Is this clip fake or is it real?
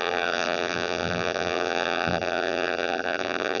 fake